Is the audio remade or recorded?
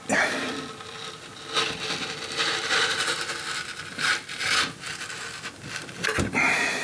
recorded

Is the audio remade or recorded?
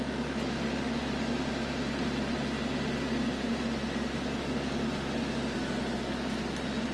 recorded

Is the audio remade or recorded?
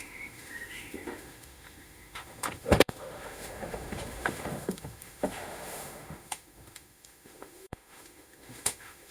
remade